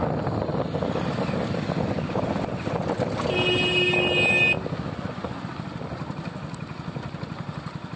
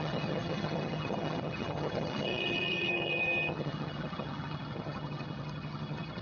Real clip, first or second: first